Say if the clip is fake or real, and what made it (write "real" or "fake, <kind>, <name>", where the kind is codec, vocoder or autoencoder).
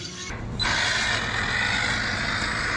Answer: real